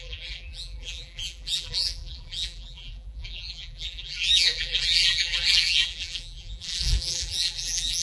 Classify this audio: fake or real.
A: fake